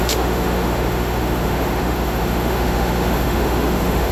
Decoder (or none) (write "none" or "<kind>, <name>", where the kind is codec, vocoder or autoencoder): autoencoder, DAC-VAE